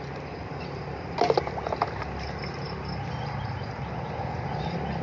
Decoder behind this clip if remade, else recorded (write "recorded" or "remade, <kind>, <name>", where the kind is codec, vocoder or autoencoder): recorded